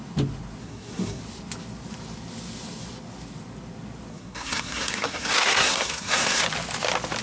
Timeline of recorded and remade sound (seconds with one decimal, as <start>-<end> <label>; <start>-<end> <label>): 0.0-0.6 recorded; 0.6-1.2 remade; 1.2-4.1 recorded; 4.1-6.4 remade; 6.4-7.2 recorded